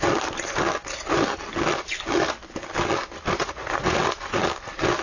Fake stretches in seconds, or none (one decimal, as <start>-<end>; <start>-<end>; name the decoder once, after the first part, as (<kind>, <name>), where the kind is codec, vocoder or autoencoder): 3.4-4.0 (vocoder, Vocos)